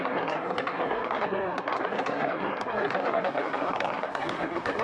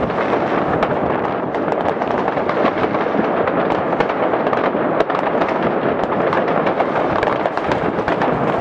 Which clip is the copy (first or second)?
first